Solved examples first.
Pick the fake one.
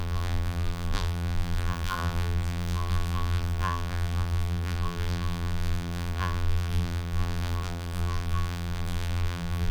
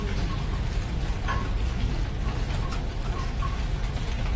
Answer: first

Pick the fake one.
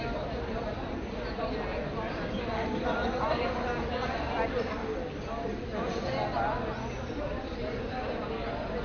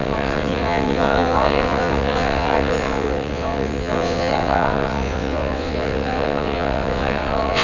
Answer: second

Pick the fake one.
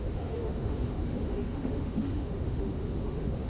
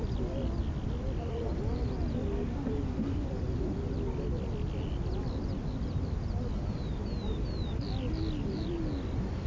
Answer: first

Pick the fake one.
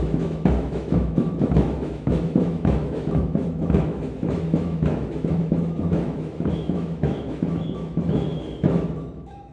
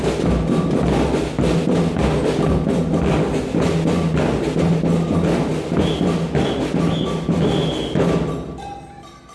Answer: first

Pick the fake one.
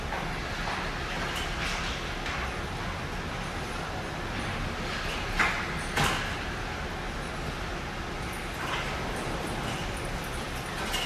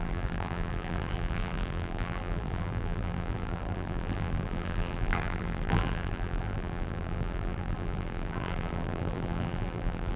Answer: second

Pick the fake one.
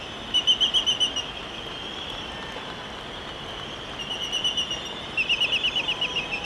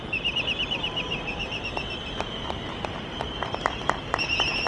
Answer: second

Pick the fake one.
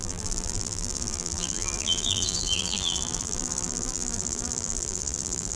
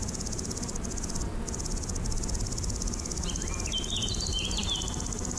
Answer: first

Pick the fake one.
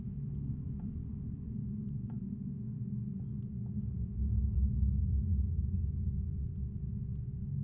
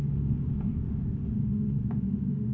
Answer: second